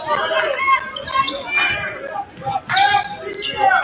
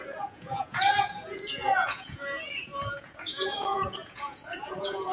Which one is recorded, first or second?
first